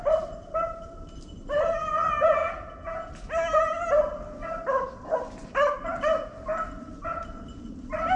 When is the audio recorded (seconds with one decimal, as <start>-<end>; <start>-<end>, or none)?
0.0-2.4; 3.1-8.2